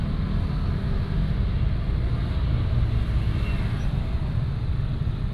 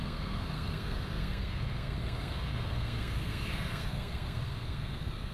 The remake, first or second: second